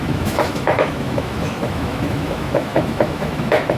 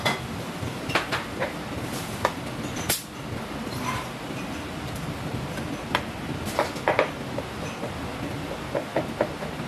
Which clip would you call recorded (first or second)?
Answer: second